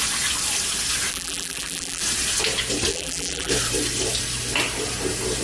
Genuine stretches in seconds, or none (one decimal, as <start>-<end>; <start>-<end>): 0.0-1.1; 2.0-2.9; 3.5-5.4